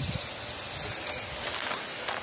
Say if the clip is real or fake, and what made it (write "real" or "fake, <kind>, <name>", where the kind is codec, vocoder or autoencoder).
real